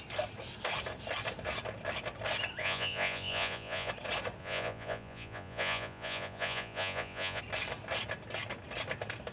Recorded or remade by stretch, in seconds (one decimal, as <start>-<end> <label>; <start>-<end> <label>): 0.0-2.6 recorded; 2.6-3.9 remade; 3.9-4.4 recorded; 4.4-7.4 remade; 7.4-9.3 recorded